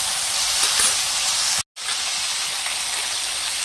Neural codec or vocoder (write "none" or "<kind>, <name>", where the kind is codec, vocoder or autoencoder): none